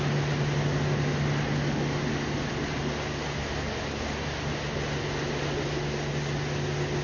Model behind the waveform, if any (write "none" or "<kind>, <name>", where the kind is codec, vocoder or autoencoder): none